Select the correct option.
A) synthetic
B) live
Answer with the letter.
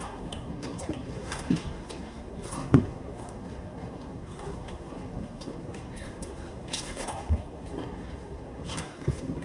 A